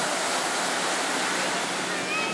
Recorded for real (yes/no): yes